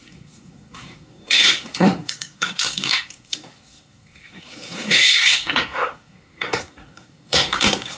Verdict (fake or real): fake